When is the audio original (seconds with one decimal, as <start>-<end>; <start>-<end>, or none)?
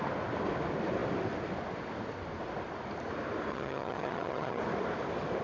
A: 0.0-3.5; 4.6-5.4